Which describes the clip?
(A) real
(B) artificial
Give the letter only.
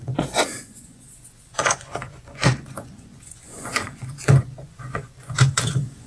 B